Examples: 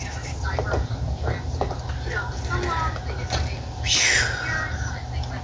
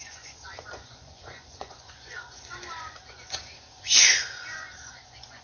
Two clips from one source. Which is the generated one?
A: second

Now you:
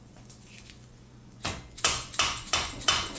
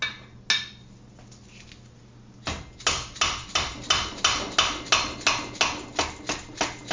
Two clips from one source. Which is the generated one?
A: first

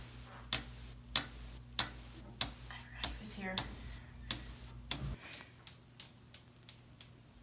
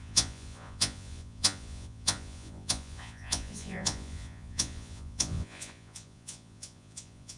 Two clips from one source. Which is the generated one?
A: second